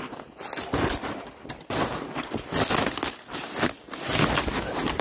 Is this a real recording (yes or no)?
yes